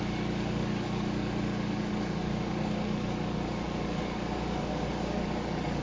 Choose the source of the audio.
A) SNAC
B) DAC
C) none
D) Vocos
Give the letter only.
B